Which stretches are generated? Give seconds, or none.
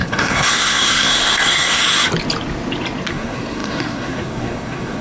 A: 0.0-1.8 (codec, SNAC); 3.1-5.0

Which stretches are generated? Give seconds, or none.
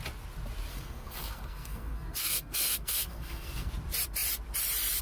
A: 0.7-3.7 (codec, SNAC)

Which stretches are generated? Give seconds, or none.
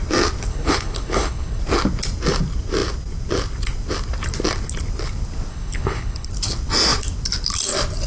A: 0.5-1.6 (codec, HILCodec); 5.5-6.3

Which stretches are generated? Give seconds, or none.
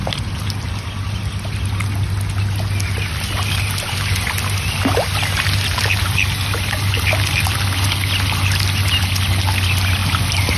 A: none